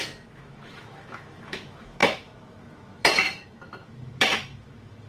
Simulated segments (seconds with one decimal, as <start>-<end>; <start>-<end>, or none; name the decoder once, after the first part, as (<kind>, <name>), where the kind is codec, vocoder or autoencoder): 0.0-5.1 (autoencoder, DAC-VAE)